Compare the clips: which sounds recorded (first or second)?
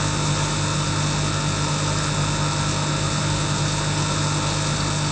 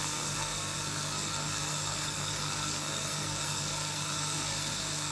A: first